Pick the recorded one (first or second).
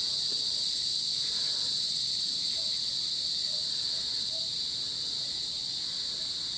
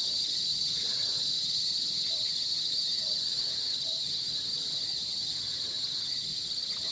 first